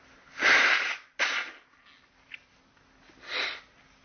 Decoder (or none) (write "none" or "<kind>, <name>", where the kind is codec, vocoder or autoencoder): none